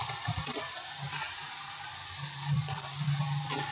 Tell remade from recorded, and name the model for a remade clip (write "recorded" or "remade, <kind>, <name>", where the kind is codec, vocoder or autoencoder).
remade, vocoder, BigVGAN v2